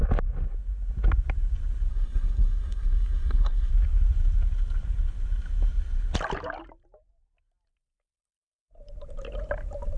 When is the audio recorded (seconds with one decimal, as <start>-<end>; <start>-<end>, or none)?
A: 0.0-1.9; 3.7-10.0

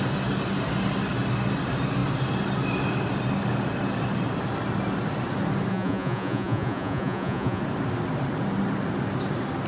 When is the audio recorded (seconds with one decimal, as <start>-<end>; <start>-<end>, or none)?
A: 0.0-5.7; 7.6-9.7

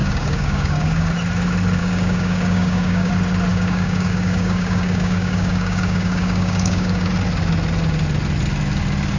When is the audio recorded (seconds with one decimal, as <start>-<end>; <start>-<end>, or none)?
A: 1.1-1.8; 3.1-3.5; 7.1-9.2

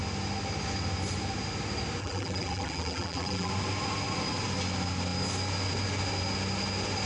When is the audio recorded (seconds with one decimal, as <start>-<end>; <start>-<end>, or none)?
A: 0.0-2.0; 3.5-7.1

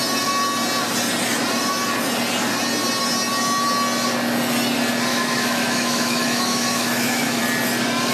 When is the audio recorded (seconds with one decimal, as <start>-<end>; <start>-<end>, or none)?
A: 0.0-5.1; 7.4-8.1